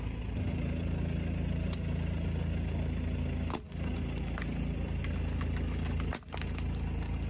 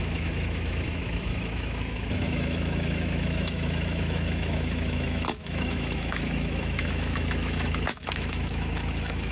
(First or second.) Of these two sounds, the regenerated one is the second